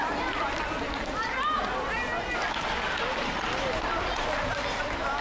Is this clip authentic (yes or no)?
yes